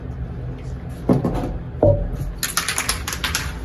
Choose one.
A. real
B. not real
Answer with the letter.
A